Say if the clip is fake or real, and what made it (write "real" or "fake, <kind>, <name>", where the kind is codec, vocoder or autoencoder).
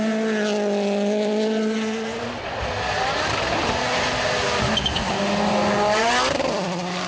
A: real